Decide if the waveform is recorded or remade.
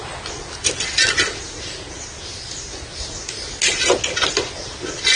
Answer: recorded